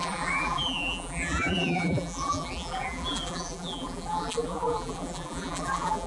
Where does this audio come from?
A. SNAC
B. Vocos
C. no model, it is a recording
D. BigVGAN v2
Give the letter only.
D